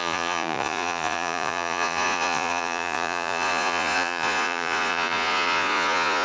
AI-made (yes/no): yes